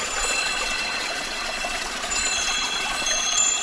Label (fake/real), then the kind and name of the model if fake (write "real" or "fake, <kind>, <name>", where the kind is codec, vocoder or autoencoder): fake, vocoder, Vocos